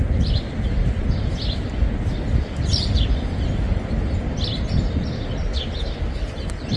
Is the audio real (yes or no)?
yes